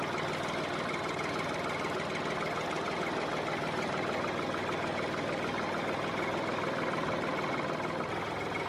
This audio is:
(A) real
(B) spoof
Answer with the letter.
A